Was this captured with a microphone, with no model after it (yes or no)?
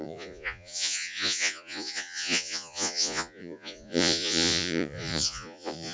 no